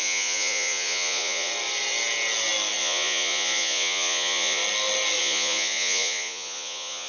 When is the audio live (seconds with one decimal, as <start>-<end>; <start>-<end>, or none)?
1.5-2.8; 4.6-5.2